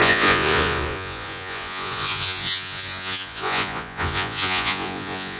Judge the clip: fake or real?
fake